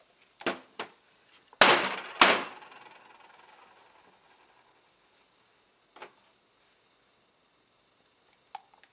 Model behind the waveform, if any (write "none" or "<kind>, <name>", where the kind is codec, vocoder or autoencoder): none